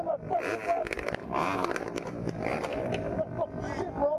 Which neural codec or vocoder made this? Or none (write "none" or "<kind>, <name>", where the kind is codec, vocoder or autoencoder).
none